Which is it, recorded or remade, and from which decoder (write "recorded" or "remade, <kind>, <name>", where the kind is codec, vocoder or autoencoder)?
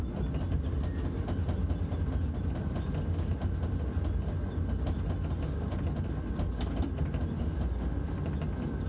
recorded